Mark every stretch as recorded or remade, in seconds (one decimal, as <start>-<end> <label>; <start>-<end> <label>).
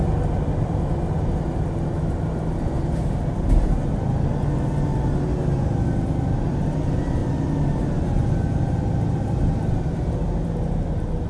0.0-11.3 recorded